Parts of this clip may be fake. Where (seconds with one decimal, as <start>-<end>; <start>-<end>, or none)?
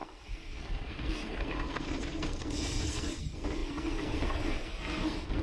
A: 0.0-5.4